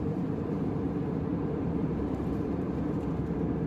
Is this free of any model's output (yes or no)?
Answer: no